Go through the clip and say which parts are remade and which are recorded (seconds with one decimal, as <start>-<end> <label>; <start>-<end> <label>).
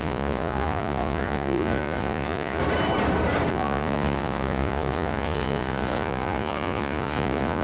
0.0-2.6 remade; 2.6-3.5 recorded; 3.5-7.6 remade